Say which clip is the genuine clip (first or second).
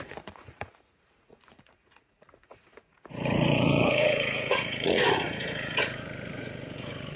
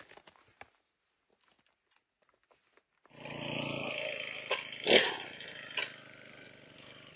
second